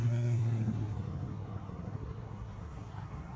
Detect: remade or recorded remade